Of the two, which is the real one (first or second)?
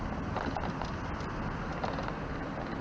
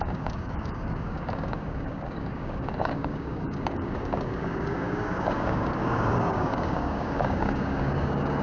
first